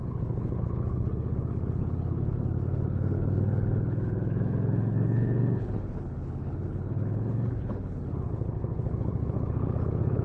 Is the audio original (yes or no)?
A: no